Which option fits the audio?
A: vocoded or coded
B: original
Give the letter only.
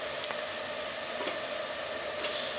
B